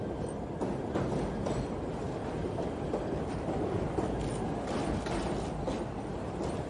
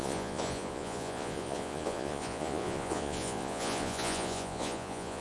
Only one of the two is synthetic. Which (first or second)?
second